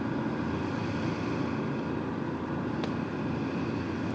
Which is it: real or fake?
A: real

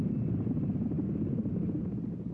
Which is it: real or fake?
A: real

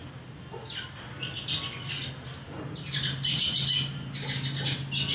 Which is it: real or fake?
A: real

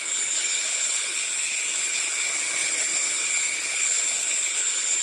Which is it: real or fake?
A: fake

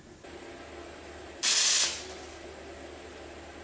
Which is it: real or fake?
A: real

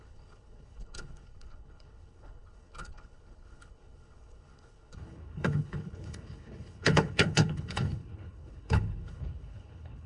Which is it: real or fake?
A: fake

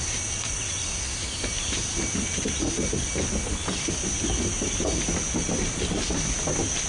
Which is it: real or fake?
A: real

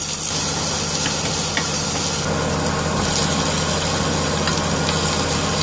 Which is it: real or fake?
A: real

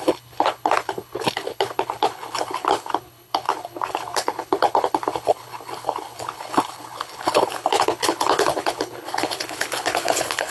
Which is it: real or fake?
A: fake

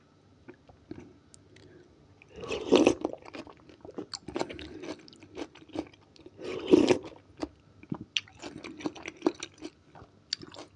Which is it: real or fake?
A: real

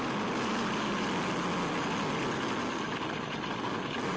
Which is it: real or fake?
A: real